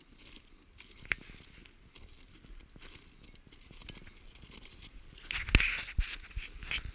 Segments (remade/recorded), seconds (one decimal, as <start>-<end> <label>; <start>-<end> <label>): 0.0-3.8 recorded; 3.8-5.3 remade; 5.3-6.9 recorded

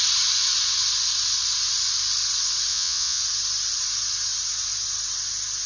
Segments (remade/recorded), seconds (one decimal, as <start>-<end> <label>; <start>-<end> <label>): 0.0-2.7 recorded; 2.7-3.2 remade; 3.2-5.7 recorded

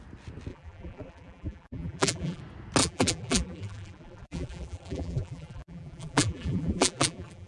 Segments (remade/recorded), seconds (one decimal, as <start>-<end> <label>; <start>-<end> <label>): 0.0-0.5 recorded; 0.5-2.4 remade; 2.4-2.8 recorded; 2.8-7.5 remade

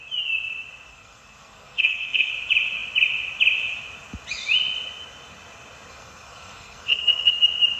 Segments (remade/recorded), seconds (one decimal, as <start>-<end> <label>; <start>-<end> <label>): 0.0-0.9 recorded; 0.9-2.3 remade; 2.3-5.9 recorded; 5.9-7.3 remade; 7.3-7.8 recorded